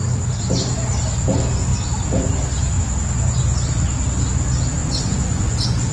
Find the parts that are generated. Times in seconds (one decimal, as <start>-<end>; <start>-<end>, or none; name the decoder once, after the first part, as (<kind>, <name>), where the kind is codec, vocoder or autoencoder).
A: 4.8-5.9 (vocoder, Vocos)

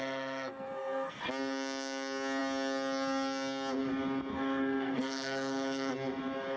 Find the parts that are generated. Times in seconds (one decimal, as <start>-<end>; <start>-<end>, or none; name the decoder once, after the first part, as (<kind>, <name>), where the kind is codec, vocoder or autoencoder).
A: 0.0-1.2 (codec, SNAC); 4.3-5.9

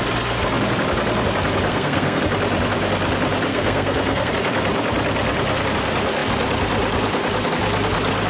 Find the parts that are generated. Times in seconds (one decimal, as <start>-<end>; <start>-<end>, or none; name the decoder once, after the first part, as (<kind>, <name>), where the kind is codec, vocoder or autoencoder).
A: 1.7-2.2 (codec, SNAC); 3.5-4.3

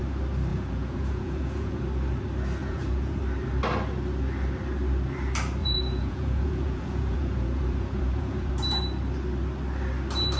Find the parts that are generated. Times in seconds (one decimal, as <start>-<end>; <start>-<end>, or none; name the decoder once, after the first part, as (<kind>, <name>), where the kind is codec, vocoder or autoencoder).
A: 0.5-1.8 (vocoder, Vocos); 2.6-3.2; 5.6-8.5

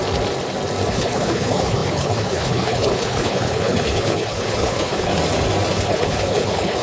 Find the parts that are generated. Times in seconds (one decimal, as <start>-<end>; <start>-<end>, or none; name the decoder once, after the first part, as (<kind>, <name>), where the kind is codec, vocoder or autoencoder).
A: 0.9-5.1 (codec, HILCodec); 5.7-6.8

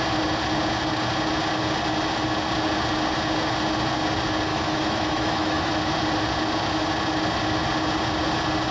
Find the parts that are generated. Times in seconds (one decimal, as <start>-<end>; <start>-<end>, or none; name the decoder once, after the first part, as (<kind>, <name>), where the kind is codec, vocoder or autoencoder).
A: 4.5-5.7 (autoencoder, DAC-VAE)

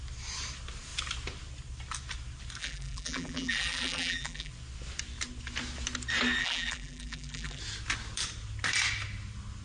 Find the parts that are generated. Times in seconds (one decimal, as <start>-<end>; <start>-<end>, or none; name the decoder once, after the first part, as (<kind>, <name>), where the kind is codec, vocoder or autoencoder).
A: 2.6-4.5 (vocoder, BigVGAN v2); 6.4-7.6

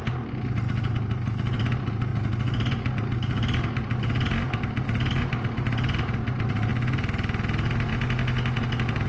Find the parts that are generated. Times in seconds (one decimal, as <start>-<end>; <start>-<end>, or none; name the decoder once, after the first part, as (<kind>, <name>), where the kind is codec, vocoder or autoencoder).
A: none